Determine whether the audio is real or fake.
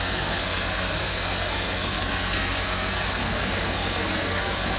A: fake